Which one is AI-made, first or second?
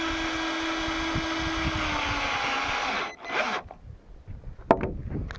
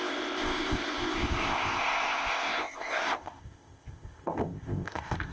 second